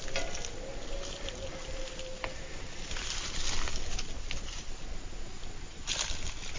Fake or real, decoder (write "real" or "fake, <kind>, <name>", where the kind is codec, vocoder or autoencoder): real